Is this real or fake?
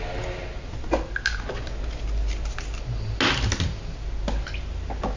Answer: real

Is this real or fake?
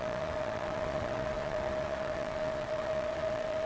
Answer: fake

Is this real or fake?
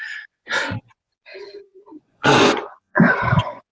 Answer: fake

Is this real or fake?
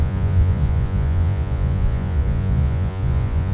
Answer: fake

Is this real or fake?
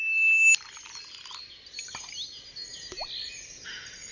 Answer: real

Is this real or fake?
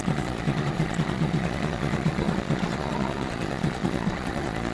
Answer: fake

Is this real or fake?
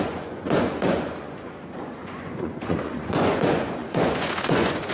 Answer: fake